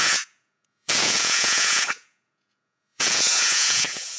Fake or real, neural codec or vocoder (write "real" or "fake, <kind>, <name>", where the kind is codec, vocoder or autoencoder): fake, vocoder, Vocos